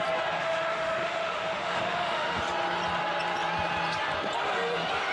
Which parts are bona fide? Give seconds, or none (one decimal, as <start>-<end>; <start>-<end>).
0.0-0.4; 2.4-5.1